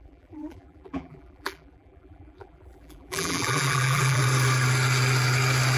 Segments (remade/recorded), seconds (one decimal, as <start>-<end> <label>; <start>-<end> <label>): 0.0-4.2 remade; 4.2-5.8 recorded